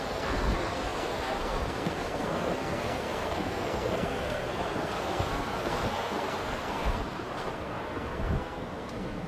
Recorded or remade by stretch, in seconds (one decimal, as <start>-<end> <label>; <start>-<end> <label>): 0.0-9.3 remade